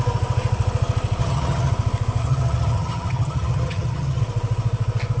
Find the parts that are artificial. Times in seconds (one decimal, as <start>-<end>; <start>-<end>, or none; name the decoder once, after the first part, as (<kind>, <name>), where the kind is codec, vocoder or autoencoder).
1.2-1.7 (vocoder, HiFi-GAN); 2.2-4.2